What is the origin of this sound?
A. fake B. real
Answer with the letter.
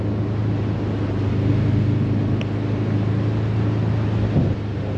B